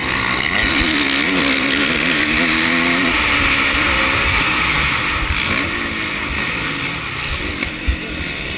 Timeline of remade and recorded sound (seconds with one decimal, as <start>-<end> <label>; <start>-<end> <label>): 0.0-8.6 recorded